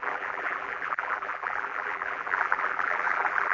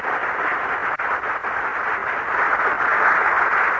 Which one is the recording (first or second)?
second